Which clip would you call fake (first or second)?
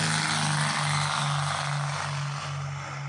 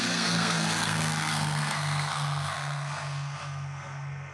second